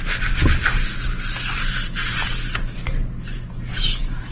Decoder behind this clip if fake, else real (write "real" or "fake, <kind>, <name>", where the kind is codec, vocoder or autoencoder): real